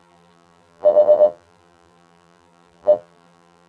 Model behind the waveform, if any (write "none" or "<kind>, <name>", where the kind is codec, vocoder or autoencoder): vocoder, BigVGAN v2